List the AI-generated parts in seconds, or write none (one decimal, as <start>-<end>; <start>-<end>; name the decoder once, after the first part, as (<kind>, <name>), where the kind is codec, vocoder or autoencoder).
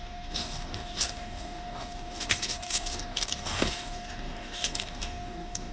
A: 0.0-5.7 (codec, DAC)